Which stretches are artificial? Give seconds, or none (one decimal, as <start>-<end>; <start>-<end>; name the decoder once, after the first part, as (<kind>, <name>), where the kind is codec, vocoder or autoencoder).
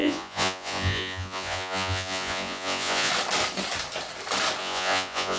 0.0-3.1 (vocoder, Vocos); 4.6-5.4